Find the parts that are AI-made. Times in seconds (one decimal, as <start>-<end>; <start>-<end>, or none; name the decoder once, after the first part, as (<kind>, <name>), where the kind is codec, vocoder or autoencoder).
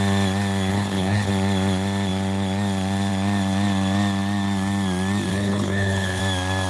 0.7-1.3 (codec, HILCodec); 5.3-6.2